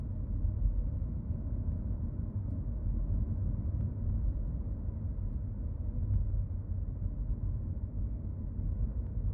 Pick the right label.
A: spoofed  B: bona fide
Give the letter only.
B